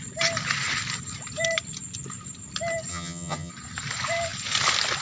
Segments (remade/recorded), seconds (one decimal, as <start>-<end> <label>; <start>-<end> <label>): 0.0-2.9 recorded; 2.9-3.5 remade; 3.5-5.0 recorded